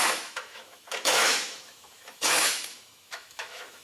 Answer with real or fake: fake